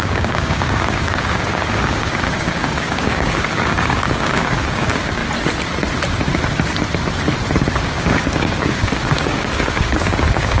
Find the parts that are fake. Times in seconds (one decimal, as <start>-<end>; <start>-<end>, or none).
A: 0.0-5.2; 7.8-10.6